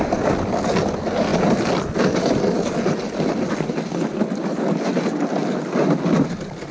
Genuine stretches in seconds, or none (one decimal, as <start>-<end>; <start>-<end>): 0.0-6.7